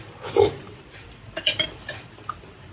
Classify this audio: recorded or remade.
remade